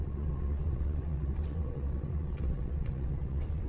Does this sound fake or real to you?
fake